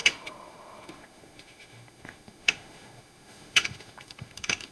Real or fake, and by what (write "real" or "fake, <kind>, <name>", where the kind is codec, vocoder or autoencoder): fake, autoencoder, DAC-VAE